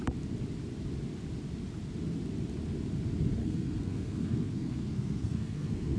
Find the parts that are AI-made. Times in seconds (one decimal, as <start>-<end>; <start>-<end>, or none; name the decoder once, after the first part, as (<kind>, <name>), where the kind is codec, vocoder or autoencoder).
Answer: 3.4-6.0 (codec, SNAC)